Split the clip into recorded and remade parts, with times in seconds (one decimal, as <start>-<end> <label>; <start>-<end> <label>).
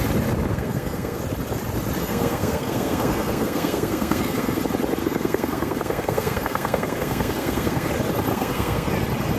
0.0-0.5 recorded; 0.5-1.2 remade; 1.2-2.0 recorded; 2.0-4.6 remade; 4.6-5.0 recorded; 5.0-7.9 remade; 7.9-8.3 recorded; 8.3-8.9 remade; 8.9-9.4 recorded